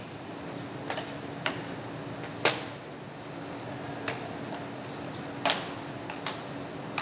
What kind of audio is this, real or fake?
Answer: real